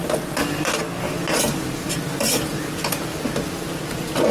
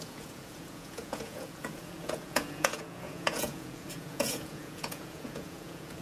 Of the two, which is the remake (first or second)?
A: second